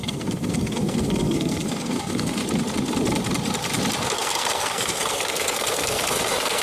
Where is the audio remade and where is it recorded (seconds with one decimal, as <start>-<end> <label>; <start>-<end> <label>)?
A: 0.0-2.4 remade; 2.4-4.0 recorded; 4.0-6.6 remade